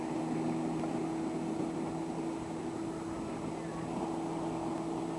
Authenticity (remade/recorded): recorded